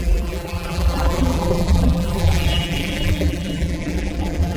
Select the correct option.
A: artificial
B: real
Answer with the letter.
A